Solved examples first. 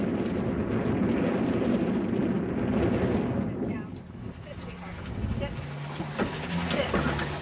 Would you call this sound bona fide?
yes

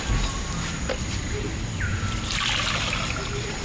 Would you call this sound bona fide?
yes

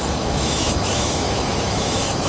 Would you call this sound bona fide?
no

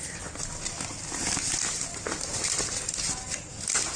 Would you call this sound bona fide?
yes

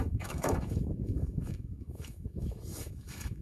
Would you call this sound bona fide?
no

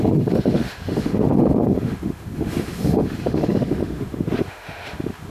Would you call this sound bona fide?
no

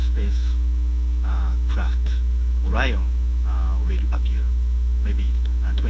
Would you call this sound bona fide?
no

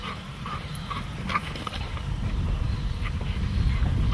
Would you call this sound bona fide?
yes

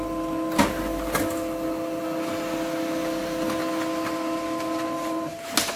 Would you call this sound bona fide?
yes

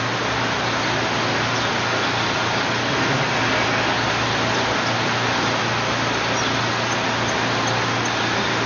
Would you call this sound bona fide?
yes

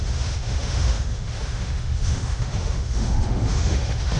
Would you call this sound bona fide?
no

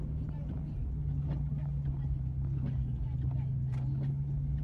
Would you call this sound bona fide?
yes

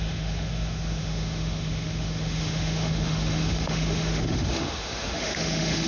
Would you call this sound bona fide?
no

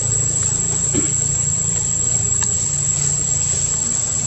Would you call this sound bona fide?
yes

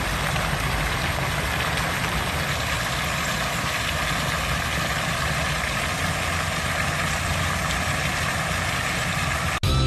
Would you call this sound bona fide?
yes